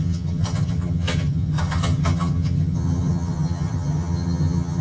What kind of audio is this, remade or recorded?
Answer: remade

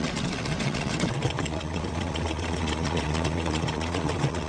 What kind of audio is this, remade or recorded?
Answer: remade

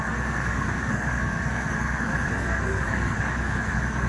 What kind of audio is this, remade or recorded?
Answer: remade